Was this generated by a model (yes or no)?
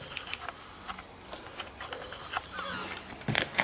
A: no